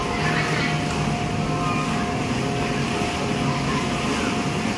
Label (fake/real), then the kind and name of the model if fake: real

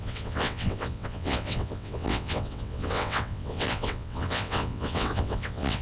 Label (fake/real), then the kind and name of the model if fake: fake, vocoder, WaveNeXt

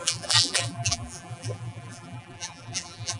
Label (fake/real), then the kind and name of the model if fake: fake, vocoder, BigVGAN v2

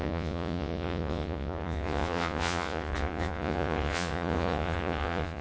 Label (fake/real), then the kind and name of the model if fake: fake, vocoder, Vocos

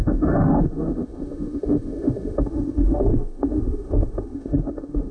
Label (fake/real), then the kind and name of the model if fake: fake, autoencoder, DAC-VAE